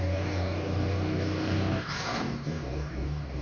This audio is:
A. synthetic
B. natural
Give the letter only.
A